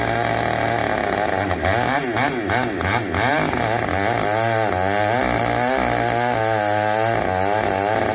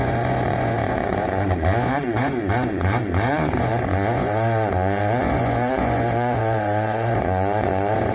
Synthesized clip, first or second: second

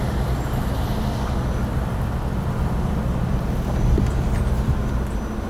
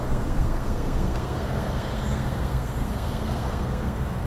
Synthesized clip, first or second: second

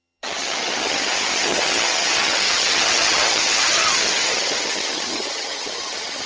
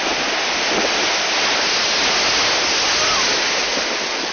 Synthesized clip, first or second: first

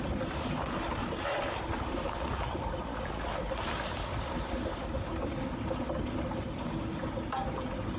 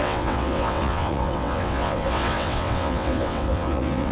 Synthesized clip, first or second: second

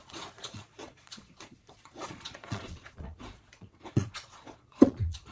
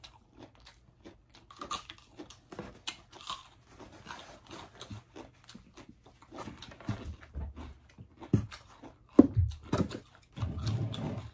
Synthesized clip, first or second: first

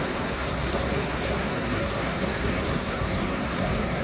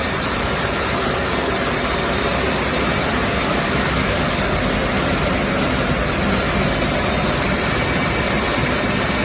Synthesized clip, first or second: first